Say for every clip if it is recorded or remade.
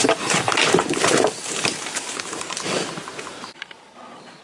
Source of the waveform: remade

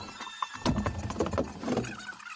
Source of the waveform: recorded